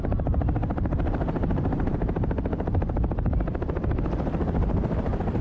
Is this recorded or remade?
remade